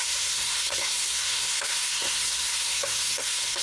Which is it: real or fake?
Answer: fake